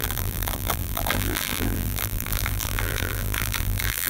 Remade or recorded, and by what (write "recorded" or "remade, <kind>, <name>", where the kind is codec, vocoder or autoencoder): remade, vocoder, BigVGAN v2